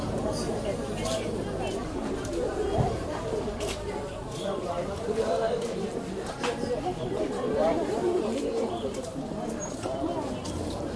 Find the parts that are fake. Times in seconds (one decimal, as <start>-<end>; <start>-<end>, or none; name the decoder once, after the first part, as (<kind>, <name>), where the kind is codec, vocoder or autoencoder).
0.0-3.2 (vocoder, BigVGAN v2); 4.1-11.0